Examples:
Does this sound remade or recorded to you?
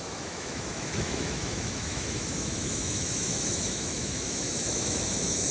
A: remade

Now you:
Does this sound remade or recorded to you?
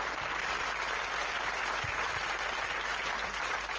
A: remade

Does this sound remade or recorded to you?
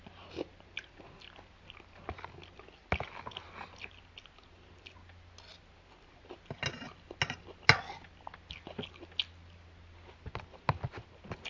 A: recorded